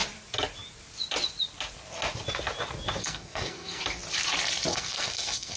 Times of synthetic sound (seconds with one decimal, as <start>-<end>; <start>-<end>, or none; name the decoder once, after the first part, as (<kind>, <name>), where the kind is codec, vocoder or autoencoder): 3.0-3.8 (codec, SNAC); 4.7-5.6